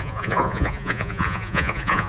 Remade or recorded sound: remade